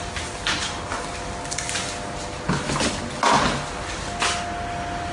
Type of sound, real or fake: real